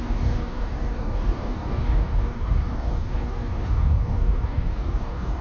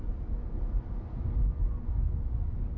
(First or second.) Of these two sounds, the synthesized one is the first